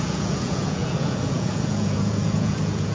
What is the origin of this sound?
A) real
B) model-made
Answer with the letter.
B